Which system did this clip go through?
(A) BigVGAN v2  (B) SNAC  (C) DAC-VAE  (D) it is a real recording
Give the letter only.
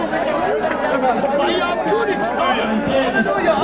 D